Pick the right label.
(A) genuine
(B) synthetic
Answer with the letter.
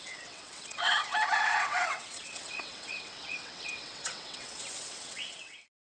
B